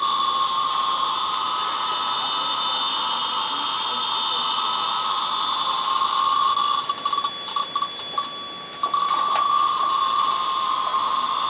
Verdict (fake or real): real